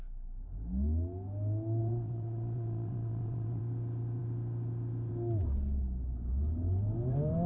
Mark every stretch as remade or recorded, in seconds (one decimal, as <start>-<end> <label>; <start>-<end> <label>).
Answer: 0.0-1.8 recorded; 1.8-3.6 remade; 3.6-7.5 recorded